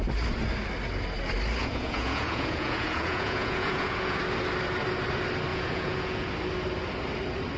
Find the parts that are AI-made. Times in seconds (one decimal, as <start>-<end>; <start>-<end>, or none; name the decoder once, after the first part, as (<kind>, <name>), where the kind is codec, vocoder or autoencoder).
1.6-4.2 (vocoder, Vocos); 5.5-6.3